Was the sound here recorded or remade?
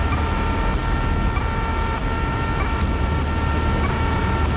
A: recorded